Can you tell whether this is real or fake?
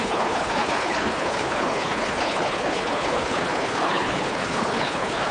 fake